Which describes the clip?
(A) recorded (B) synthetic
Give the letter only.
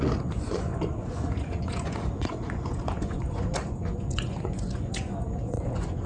B